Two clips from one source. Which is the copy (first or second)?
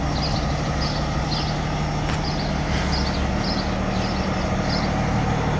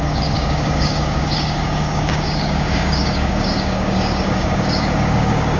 second